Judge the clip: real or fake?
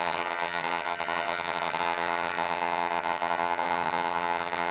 fake